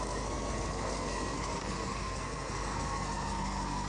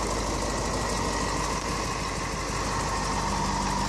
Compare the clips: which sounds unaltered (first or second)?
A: second